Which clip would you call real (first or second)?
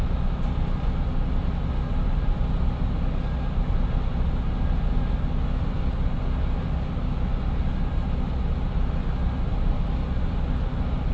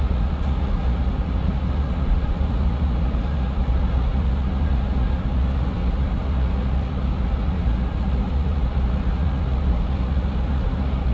first